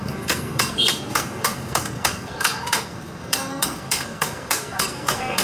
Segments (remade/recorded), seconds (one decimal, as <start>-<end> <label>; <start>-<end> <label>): 0.0-5.4 remade